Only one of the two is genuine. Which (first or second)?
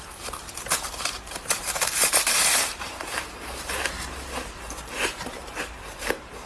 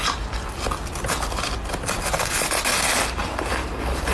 second